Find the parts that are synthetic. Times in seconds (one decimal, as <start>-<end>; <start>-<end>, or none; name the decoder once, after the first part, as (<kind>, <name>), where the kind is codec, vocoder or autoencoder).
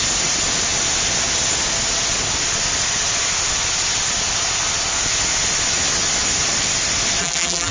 7.2-7.7 (vocoder, BigVGAN v2)